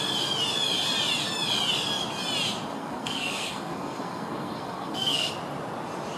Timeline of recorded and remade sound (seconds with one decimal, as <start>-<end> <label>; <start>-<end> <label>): 0.0-2.7 recorded; 2.7-5.3 remade; 5.3-6.2 recorded